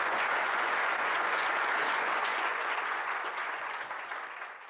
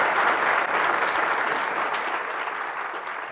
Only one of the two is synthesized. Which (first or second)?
first